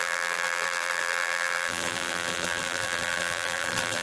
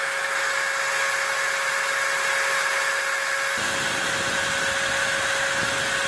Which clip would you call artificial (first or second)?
first